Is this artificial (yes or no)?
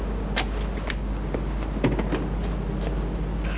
no